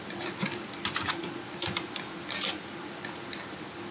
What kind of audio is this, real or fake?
fake